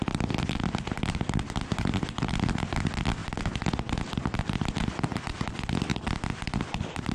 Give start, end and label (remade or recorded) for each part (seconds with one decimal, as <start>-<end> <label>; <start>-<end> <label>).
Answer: 0.0-5.9 remade; 5.9-6.4 recorded; 6.4-7.1 remade